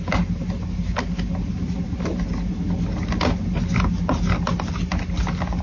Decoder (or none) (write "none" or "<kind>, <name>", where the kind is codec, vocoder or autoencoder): none